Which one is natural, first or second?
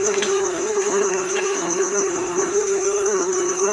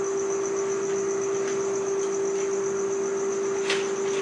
second